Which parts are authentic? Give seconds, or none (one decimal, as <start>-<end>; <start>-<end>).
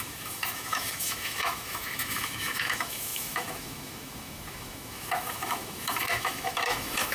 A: none